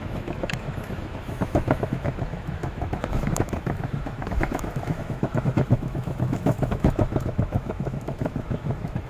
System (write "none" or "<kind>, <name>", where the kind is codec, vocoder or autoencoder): autoencoder, DAC-VAE